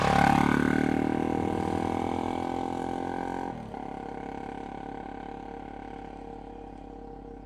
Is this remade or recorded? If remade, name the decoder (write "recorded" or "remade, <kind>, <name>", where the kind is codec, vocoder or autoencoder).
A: recorded